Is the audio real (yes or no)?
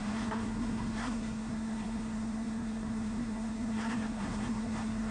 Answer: no